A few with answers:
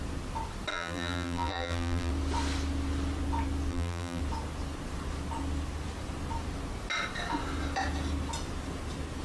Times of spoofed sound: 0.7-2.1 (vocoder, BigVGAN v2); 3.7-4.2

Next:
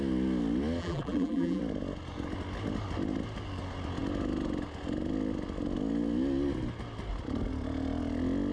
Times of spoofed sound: 0.8-1.6 (vocoder, BigVGAN v2)